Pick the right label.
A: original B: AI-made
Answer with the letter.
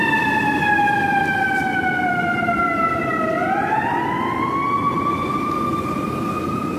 B